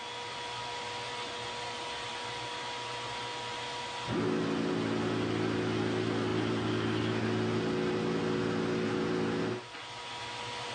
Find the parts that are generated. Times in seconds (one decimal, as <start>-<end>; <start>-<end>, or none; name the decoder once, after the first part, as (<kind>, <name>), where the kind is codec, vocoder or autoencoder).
none